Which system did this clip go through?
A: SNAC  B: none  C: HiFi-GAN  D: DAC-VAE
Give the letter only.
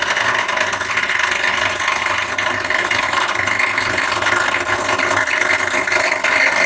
B